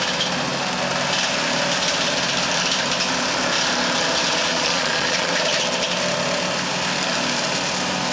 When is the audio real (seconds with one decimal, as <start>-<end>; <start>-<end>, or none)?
0.0-4.5; 5.3-8.1